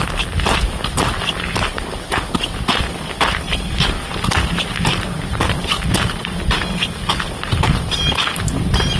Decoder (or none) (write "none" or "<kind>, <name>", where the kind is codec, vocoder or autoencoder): none